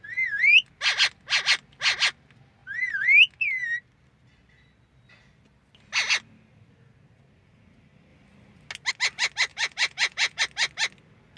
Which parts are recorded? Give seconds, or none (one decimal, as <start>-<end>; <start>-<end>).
0.0-9.5; 10.4-11.4